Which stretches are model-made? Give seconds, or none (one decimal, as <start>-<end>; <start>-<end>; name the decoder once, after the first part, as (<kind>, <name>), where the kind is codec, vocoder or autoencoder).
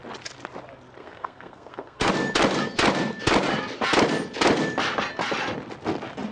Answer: 1.0-2.1 (codec, SNAC)